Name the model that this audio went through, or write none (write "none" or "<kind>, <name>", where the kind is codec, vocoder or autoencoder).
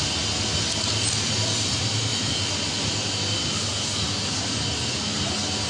none